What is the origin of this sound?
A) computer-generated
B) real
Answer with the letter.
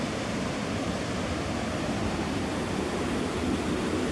B